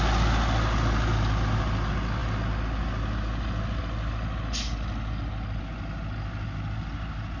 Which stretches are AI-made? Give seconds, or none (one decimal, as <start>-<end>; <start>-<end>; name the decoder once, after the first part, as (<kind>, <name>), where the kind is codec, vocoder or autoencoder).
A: none